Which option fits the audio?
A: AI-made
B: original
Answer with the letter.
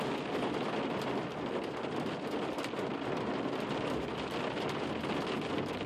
B